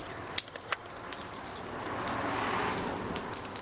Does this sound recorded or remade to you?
recorded